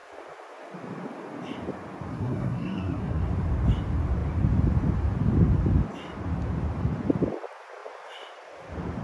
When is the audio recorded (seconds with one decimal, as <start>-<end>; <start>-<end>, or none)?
0.0-2.1; 3.2-9.0